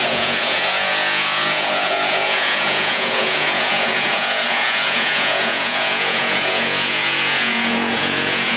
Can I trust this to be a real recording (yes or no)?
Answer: no